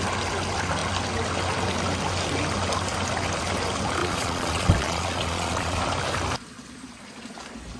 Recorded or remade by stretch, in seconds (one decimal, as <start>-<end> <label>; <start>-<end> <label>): 0.0-4.0 recorded; 4.0-5.8 remade; 5.8-7.8 recorded